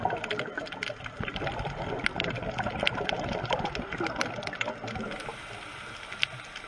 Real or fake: real